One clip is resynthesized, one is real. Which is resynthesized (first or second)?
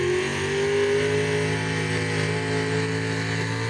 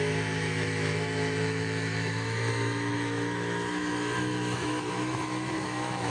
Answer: second